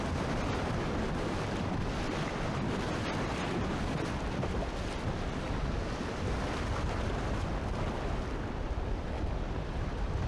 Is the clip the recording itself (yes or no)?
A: yes